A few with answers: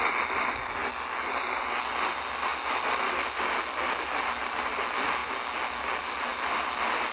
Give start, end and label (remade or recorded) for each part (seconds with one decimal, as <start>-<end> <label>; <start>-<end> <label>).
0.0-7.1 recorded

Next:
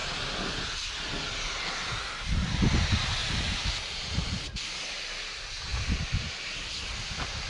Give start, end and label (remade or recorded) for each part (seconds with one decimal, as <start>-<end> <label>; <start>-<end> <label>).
0.0-7.5 remade

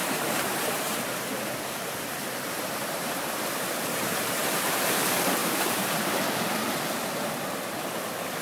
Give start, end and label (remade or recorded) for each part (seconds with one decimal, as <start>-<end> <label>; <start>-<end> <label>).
0.0-5.0 remade; 5.0-5.4 recorded; 5.4-6.2 remade; 6.2-8.4 recorded

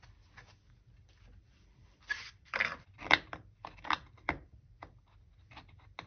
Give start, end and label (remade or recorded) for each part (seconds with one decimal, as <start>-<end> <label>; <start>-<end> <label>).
0.0-1.4 recorded; 1.4-5.1 remade; 5.1-6.1 recorded

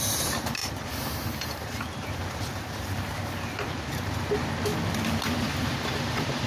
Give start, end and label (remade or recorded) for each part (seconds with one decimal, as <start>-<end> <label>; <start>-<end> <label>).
0.0-4.7 remade; 4.7-5.4 recorded; 5.4-6.5 remade